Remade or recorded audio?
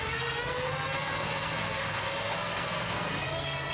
remade